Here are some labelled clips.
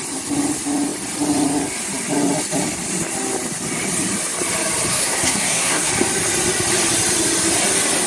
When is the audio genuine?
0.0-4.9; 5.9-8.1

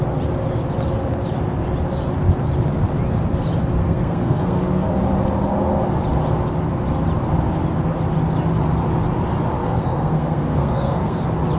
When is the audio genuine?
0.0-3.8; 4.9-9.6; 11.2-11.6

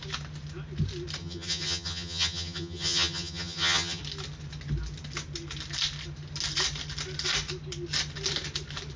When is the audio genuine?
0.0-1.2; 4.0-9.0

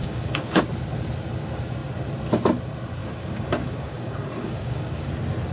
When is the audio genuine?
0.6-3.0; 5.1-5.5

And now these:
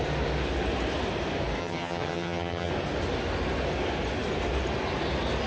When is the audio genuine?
0.0-1.6; 2.7-5.5

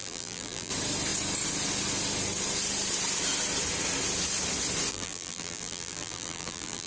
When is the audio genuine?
0.7-4.9